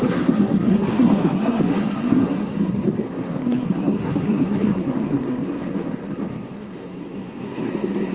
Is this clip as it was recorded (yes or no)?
no